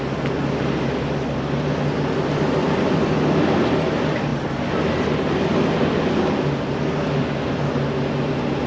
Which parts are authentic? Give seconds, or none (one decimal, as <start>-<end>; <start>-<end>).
0.0-8.7